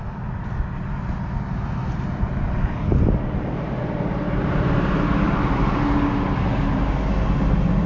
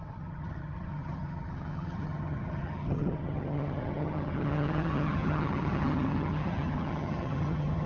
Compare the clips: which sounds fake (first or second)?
second